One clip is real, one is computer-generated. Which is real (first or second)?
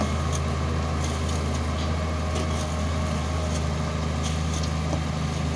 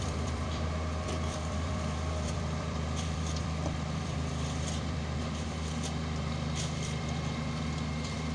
first